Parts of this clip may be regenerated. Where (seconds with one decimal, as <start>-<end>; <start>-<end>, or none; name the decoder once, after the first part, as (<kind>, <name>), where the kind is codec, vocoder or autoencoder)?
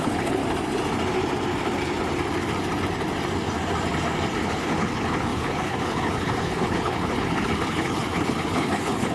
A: 0.0-0.4 (codec, HILCodec); 4.4-9.1